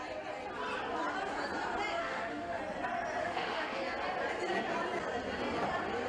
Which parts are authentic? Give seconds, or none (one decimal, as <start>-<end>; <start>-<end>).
0.0-2.0; 2.6-3.2; 3.8-6.1